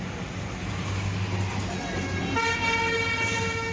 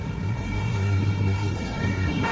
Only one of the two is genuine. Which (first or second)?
first